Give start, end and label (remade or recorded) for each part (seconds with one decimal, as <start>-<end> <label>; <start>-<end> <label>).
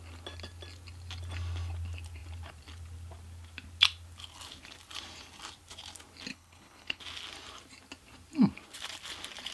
0.0-6.3 recorded; 6.3-7.0 remade; 7.0-9.5 recorded